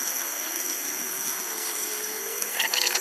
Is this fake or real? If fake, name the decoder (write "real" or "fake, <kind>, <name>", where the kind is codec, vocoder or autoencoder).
fake, codec, SNAC